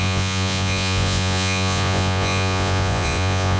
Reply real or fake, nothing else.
fake